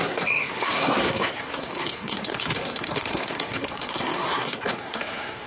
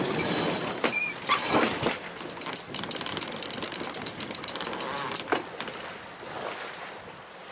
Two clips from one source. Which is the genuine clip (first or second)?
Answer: second